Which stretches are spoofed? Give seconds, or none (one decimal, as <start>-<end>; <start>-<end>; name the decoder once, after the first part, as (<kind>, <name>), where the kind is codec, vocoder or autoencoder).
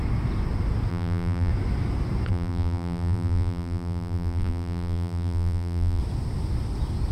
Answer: 0.9-1.5 (vocoder, BigVGAN v2); 2.3-6.0